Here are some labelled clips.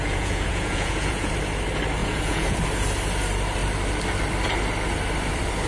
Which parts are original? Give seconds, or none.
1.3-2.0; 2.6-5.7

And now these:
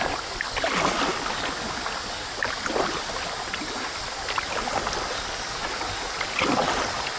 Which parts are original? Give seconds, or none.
0.0-7.2

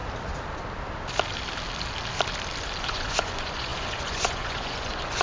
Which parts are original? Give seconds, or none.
0.0-2.8

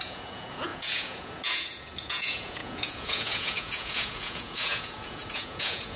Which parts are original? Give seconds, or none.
none

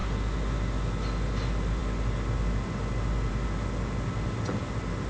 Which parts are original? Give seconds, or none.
0.0-5.1

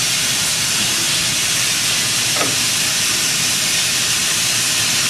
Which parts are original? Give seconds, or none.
none

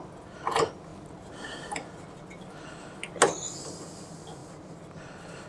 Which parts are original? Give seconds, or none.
0.0-5.5

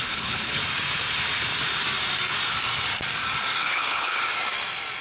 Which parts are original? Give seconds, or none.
0.6-3.6; 4.2-5.0